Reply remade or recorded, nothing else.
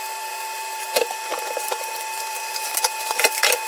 remade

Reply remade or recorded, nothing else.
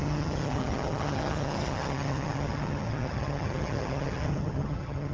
remade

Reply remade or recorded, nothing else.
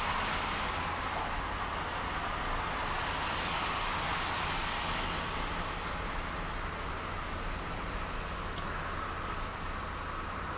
recorded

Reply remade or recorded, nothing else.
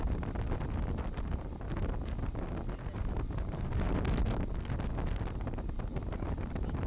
recorded